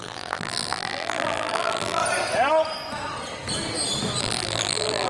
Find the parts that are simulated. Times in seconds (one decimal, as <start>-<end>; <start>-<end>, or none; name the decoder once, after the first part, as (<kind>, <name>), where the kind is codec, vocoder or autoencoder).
0.0-2.0 (vocoder, BigVGAN v2); 4.2-5.1